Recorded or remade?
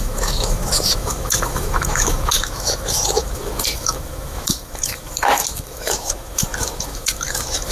remade